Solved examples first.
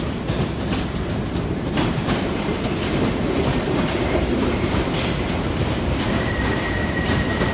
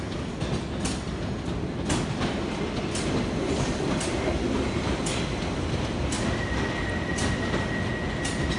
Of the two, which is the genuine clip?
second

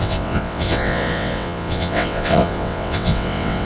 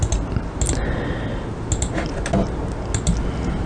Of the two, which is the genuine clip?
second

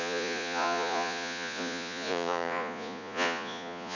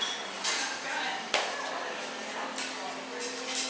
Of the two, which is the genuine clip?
second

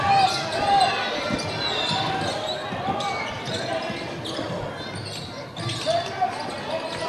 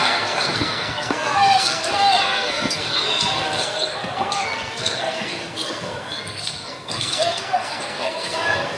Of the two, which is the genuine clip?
first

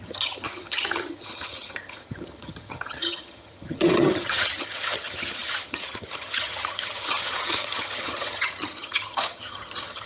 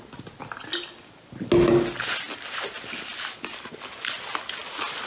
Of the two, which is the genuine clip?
second